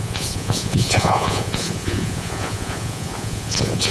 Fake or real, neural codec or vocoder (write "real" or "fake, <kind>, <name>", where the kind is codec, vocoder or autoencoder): fake, vocoder, Vocos